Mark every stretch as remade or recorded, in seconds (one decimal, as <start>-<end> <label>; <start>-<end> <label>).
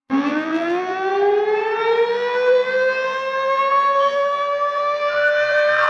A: 0.0-1.1 remade; 1.1-2.1 recorded; 2.1-5.9 remade